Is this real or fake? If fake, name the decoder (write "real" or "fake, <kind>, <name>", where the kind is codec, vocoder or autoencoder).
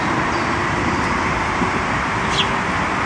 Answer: real